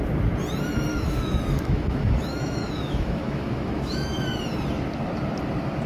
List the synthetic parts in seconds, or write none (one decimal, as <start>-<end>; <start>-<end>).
0.9-4.4